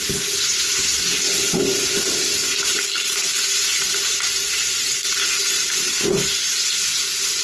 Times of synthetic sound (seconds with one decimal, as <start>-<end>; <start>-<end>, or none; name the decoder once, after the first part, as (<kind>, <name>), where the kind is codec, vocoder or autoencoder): none

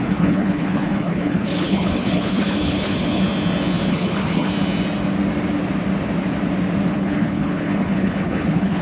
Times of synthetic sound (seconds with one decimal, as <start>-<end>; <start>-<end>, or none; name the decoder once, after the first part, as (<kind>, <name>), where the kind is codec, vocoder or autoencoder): 0.0-3.2 (codec, HILCodec); 3.9-4.5; 6.9-8.8

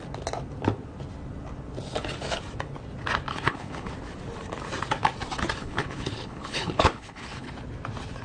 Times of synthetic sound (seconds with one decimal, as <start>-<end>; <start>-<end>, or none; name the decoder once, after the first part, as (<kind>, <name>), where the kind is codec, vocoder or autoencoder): 3.3-3.9 (codec, HILCodec); 5.6-7.5

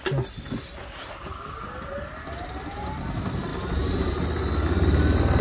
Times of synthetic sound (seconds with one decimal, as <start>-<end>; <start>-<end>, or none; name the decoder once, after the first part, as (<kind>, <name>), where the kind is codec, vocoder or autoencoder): none

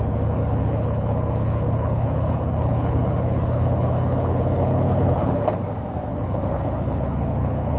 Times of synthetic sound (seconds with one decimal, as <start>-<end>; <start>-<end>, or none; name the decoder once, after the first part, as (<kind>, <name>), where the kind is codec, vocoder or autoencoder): 0.0-5.6 (codec, HILCodec); 6.1-7.8

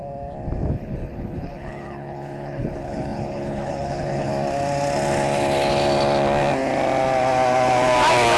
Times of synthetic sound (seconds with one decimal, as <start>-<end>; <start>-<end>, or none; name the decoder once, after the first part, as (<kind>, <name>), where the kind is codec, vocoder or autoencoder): 0.7-4.3 (codec, HILCodec)

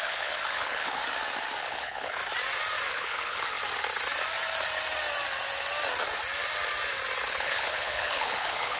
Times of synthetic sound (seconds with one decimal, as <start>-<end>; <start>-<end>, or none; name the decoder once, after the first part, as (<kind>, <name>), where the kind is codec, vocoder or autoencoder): 0.0-1.0 (codec, HILCodec); 1.6-2.2; 2.9-3.6; 7.3-8.8